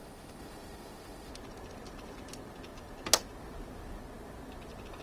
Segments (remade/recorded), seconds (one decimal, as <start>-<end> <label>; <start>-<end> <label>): 0.0-1.3 remade; 1.3-5.0 recorded